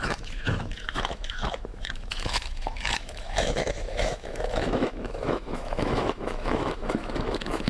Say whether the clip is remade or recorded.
remade